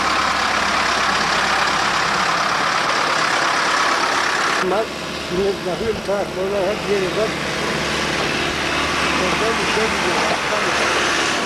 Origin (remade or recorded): recorded